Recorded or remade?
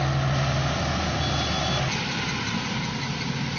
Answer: recorded